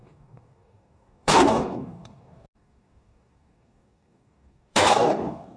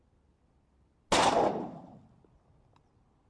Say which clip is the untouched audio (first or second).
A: second